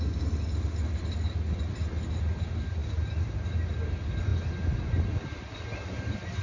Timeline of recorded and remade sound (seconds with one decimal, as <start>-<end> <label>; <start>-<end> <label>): 0.0-6.4 recorded